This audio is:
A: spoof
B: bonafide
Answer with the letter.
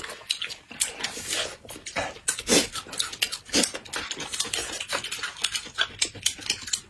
B